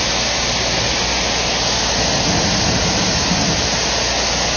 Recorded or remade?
recorded